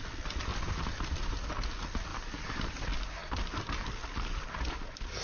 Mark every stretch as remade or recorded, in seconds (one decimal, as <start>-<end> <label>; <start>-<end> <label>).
0.0-0.5 recorded; 0.5-1.3 remade; 1.3-2.1 recorded; 2.1-2.8 remade; 2.8-3.2 recorded; 3.2-4.1 remade; 4.1-5.2 recorded